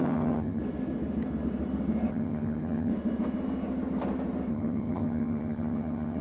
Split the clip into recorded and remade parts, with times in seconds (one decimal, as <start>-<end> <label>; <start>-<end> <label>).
0.0-0.6 remade; 0.6-2.1 recorded; 2.1-2.9 remade; 2.9-4.5 recorded; 4.5-6.2 remade